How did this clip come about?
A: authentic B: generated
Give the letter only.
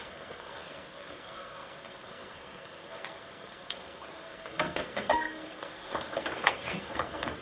B